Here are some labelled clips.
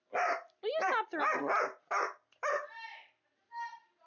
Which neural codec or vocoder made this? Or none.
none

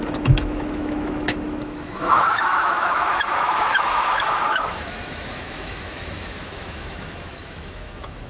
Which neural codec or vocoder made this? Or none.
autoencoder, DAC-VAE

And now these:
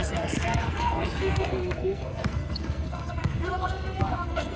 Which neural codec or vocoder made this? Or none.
codec, SNAC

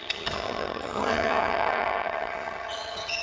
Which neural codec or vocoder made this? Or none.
vocoder, HiFi-GAN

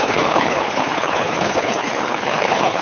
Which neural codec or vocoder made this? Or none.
codec, HILCodec